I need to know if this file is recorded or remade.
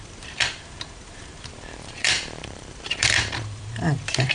remade